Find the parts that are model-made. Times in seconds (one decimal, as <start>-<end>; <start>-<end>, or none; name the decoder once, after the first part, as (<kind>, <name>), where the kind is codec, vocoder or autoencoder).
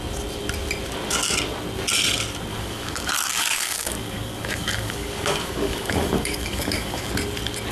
2.5-7.1 (codec, DAC)